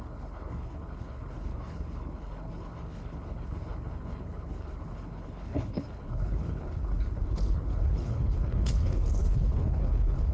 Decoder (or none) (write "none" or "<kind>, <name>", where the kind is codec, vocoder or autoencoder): codec, HILCodec